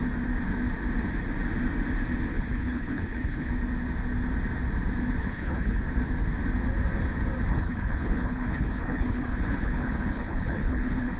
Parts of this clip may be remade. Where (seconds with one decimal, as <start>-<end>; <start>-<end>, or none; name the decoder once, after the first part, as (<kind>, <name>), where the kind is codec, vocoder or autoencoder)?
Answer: 2.3-3.5 (codec, HILCodec); 5.2-5.8; 7.5-11.2